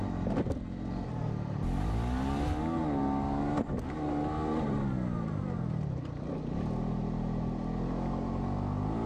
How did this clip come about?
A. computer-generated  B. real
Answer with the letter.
B